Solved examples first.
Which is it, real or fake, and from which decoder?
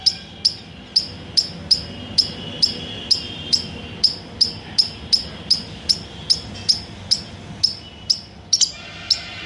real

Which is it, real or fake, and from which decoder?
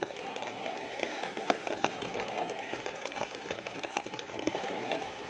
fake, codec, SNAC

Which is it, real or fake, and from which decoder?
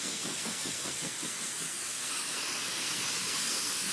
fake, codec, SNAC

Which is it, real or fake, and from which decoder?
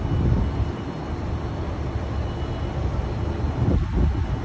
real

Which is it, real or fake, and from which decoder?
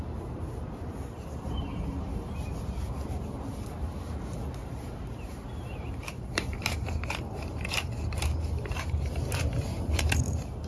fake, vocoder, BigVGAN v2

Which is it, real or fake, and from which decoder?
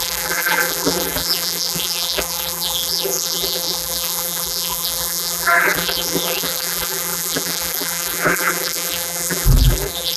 fake, vocoder, BigVGAN v2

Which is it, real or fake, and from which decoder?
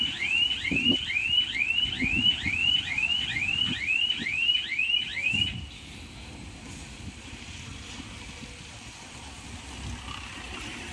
real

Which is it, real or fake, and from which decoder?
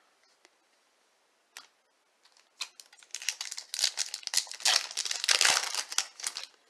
real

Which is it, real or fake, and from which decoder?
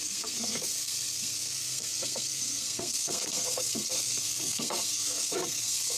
fake, codec, SNAC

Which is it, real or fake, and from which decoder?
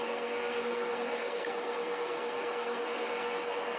fake, codec, SNAC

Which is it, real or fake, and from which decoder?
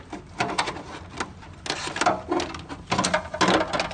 real